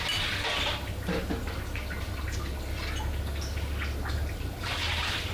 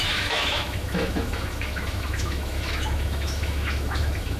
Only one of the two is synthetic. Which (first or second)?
second